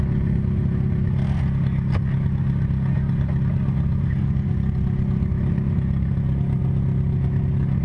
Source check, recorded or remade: recorded